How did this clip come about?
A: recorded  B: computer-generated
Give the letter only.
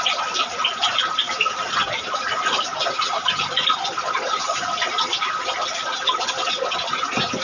A